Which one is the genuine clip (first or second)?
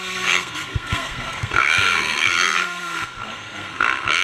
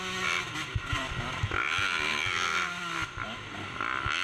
second